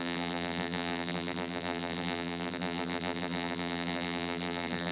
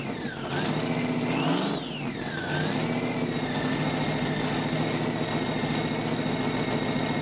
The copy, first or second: first